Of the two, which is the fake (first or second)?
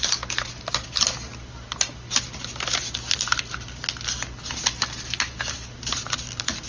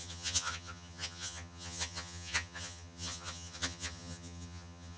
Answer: second